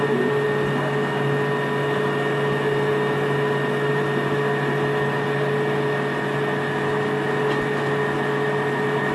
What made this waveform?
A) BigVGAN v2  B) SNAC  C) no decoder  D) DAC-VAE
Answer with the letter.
C